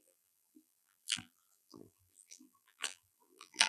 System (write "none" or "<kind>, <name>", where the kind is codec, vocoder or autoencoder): vocoder, BigVGAN v2